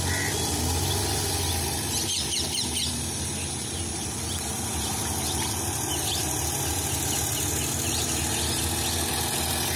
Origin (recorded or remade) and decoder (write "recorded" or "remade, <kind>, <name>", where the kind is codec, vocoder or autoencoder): recorded